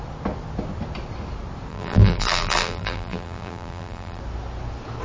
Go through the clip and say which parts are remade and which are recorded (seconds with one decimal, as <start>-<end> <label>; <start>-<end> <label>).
0.0-1.7 recorded; 1.7-4.2 remade; 4.2-5.0 recorded